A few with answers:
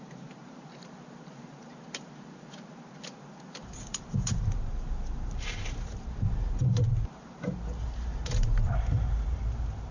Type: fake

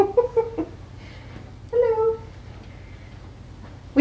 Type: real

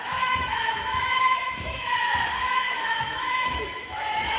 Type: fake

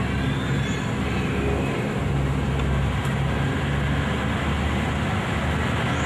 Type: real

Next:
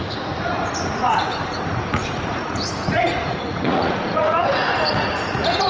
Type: fake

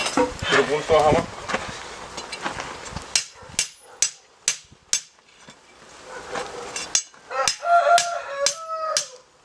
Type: real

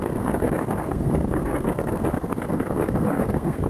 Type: fake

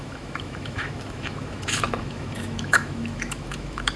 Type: fake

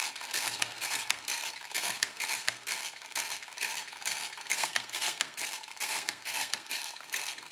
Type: fake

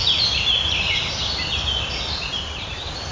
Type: fake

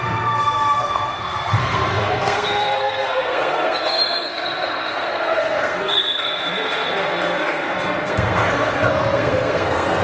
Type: fake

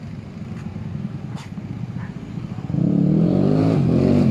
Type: real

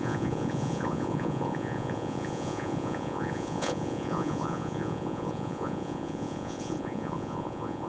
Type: fake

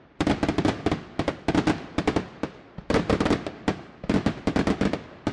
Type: real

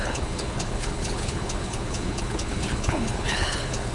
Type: fake